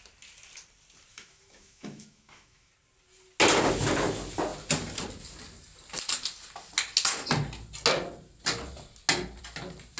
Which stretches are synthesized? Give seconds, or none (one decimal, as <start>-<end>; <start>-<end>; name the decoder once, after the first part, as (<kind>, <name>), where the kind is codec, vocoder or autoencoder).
1.1-2.7 (autoencoder, DAC-VAE)